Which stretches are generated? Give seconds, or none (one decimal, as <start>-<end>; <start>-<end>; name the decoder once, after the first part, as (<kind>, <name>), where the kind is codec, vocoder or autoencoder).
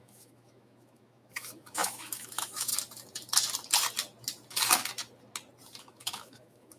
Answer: 0.0-2.7 (autoencoder, DAC-VAE); 5.8-6.8